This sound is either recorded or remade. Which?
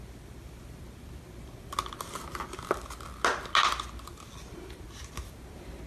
recorded